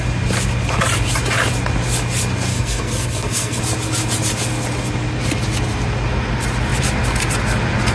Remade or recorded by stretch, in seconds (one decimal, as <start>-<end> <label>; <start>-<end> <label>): 0.0-2.5 recorded; 2.5-3.6 remade; 3.6-7.9 recorded